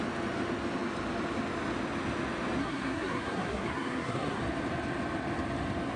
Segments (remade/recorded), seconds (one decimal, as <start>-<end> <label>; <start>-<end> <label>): 0.0-2.6 recorded; 2.6-4.4 remade; 4.4-6.0 recorded